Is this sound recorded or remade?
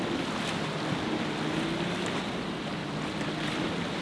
recorded